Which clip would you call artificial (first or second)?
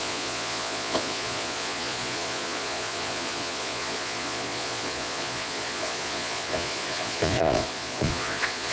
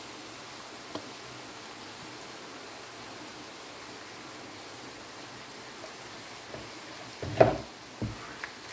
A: first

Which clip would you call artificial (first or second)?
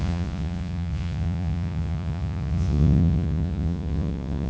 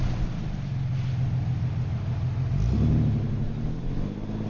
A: first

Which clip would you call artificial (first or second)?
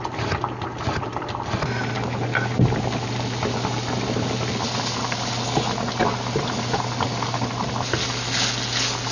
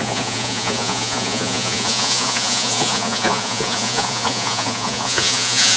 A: second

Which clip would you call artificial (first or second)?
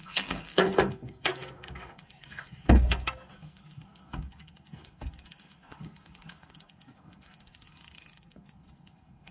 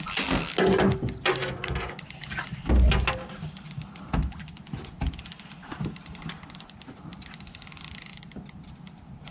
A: first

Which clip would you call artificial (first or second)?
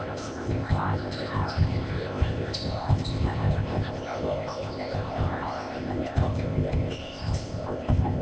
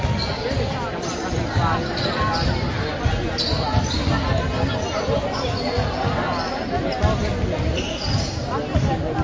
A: first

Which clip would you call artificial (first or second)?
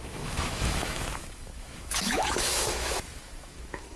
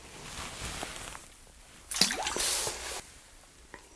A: first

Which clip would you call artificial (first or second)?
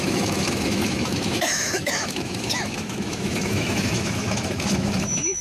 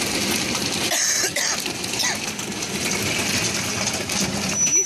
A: first